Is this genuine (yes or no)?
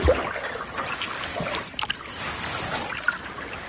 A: yes